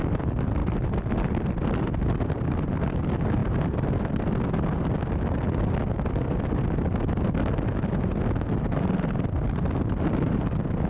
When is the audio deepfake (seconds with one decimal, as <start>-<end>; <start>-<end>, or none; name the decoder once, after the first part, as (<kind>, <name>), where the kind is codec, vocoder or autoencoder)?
none